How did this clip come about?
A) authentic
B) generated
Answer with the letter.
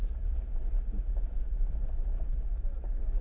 A